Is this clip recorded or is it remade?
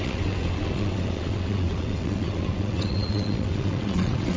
remade